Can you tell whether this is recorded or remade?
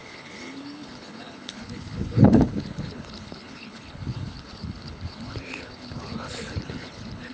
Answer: remade